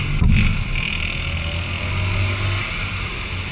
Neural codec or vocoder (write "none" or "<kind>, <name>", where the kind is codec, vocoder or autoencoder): none